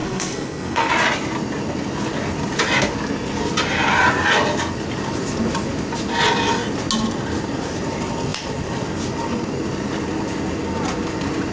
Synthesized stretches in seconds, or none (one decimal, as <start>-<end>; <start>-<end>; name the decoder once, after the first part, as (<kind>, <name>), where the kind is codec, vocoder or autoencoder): 0.0-0.9 (codec, SNAC)